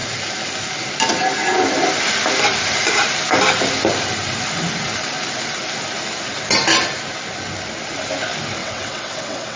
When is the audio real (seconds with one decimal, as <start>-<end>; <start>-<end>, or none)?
0.0-8.6